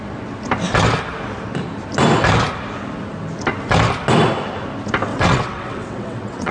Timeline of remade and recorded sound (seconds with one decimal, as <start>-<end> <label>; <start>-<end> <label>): 0.0-5.1 recorded; 5.1-6.5 remade